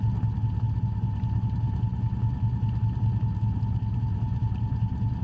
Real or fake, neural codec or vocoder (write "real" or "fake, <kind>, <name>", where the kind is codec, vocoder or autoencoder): real